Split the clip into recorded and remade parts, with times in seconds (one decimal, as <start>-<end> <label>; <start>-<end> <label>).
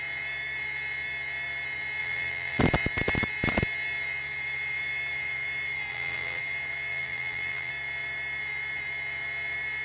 0.0-2.0 recorded; 2.0-2.6 remade; 2.6-5.9 recorded; 5.9-6.4 remade; 6.4-6.9 recorded; 6.9-7.7 remade; 7.7-9.8 recorded